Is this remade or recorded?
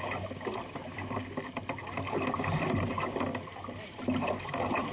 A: recorded